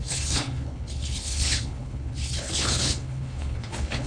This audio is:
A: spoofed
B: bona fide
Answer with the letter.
A